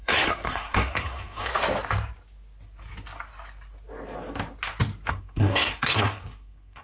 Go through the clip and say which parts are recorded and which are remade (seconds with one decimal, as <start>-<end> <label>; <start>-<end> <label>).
0.0-1.5 remade; 1.5-5.1 recorded; 5.1-6.8 remade